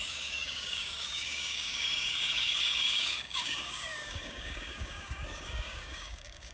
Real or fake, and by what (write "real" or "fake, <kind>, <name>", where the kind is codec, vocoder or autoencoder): fake, codec, DAC